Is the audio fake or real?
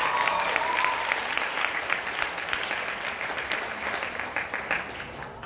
real